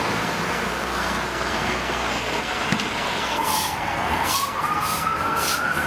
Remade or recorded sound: remade